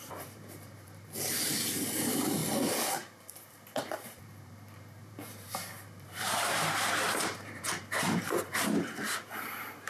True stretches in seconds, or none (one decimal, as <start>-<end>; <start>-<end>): 2.4-2.9